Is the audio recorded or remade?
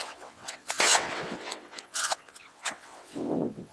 remade